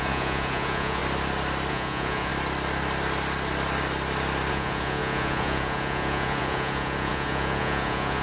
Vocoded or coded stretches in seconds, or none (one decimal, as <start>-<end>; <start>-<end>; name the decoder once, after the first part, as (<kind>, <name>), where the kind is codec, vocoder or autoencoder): 0.0-1.0 (vocoder, Vocos); 1.7-2.3; 4.5-8.2